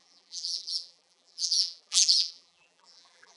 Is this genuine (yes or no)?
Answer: no